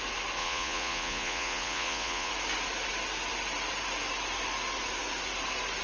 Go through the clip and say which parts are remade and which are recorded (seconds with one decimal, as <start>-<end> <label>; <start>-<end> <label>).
0.0-0.4 recorded; 0.4-2.3 remade; 2.3-5.8 recorded